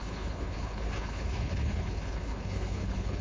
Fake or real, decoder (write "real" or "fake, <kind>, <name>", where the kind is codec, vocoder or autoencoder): fake, codec, HILCodec